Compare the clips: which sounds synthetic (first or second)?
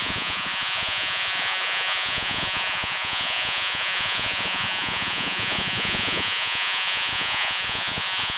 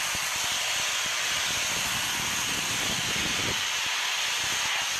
first